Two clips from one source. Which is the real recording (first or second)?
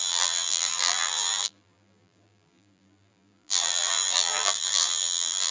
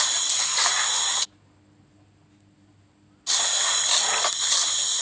second